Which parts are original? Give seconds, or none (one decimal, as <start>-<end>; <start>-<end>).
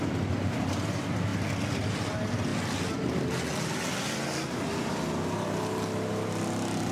0.0-6.9